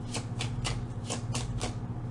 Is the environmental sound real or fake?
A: real